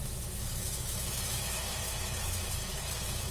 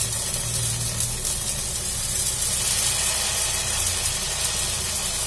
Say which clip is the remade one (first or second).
first